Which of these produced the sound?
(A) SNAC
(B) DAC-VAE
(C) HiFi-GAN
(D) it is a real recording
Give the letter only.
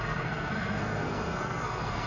A